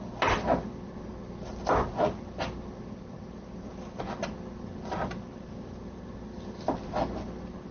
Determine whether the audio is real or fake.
real